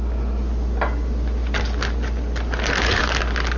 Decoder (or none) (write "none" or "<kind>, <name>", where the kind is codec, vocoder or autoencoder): none